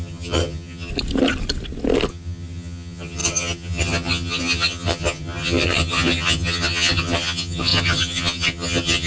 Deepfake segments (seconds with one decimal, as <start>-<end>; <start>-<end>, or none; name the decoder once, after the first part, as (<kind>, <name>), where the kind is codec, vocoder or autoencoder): 0.0-0.9 (vocoder, HiFi-GAN); 2.1-9.1